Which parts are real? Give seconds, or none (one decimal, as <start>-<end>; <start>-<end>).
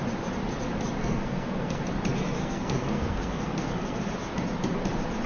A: 0.0-1.0; 1.8-2.4; 4.0-5.3